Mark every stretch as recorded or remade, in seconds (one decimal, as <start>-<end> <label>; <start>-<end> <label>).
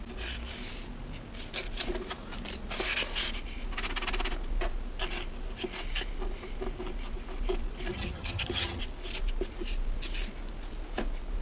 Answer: 0.0-7.9 recorded; 7.9-8.8 remade; 8.8-11.4 recorded